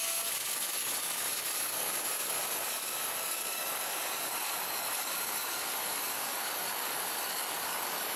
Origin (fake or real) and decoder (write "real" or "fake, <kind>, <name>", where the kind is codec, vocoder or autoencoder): fake, codec, DAC